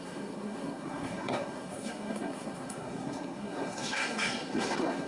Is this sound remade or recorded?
remade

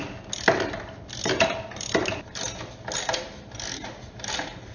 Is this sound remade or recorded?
recorded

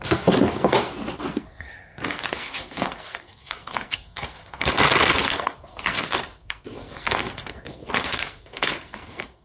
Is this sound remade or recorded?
remade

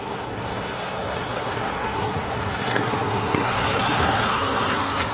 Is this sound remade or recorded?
remade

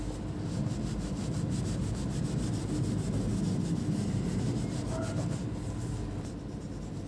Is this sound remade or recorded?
recorded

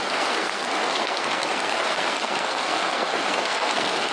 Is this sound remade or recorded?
remade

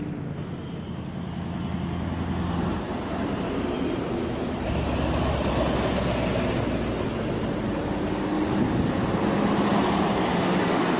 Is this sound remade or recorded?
recorded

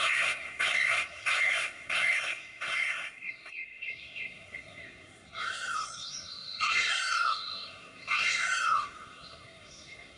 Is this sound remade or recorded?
remade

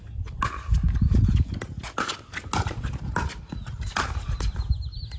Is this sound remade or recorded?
recorded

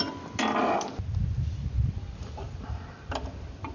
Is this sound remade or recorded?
recorded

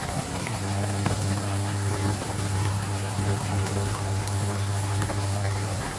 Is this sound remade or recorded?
remade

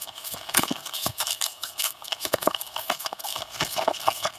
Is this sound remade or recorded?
remade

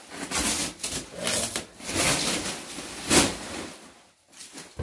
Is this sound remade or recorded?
recorded